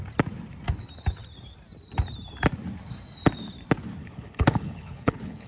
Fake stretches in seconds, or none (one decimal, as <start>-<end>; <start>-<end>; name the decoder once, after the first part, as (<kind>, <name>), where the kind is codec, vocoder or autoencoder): 4.0-5.5 (codec, HILCodec)